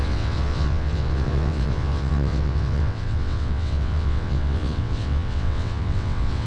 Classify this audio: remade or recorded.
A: remade